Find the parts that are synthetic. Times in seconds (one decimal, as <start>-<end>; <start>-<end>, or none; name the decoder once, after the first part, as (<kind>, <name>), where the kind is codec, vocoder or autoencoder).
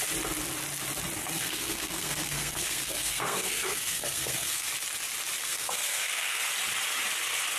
1.2-4.7 (codec, SNAC); 5.4-6.5